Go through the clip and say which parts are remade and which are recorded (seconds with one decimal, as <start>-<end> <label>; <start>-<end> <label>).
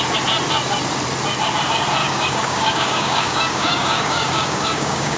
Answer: 0.0-2.0 recorded; 2.0-5.2 remade